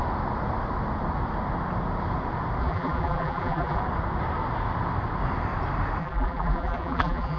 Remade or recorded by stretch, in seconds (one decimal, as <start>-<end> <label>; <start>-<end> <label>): 0.0-2.6 recorded; 2.6-3.8 remade; 3.8-6.0 recorded; 6.0-7.4 remade